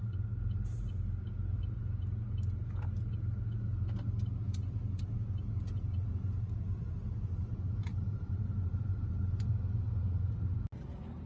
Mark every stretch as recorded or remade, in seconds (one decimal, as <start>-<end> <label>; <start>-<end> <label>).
0.0-7.9 recorded; 7.9-9.1 remade; 9.1-11.3 recorded